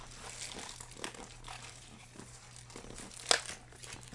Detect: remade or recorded recorded